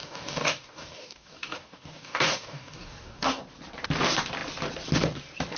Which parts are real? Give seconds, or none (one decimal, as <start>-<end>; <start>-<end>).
3.4-5.6